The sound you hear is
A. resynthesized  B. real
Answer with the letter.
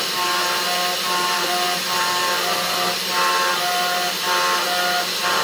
B